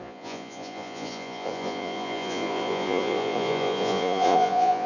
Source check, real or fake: fake